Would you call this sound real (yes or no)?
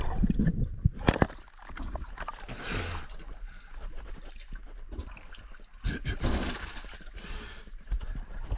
yes